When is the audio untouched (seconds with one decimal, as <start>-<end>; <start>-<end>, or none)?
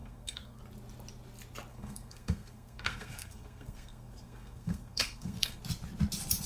0.6-1.7; 5.6-6.5